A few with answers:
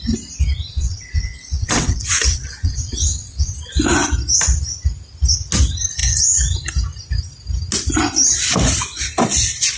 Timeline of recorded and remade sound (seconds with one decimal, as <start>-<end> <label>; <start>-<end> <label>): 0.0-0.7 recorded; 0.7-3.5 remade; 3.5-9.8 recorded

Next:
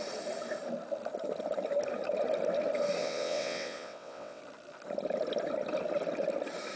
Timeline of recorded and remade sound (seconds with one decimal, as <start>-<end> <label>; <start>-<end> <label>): 0.0-3.0 recorded; 3.0-4.4 remade; 4.4-6.8 recorded

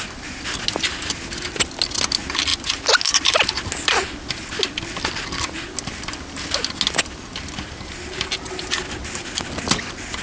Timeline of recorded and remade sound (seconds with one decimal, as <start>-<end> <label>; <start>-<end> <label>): 0.0-10.2 recorded

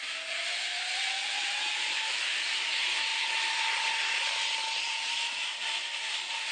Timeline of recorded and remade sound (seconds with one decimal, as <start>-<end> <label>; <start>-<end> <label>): 0.0-1.0 recorded; 1.0-1.7 remade; 1.7-6.5 recorded